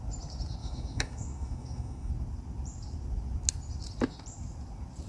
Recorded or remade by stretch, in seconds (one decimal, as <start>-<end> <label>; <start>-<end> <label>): 0.0-0.6 recorded; 0.6-2.1 remade; 2.1-5.1 recorded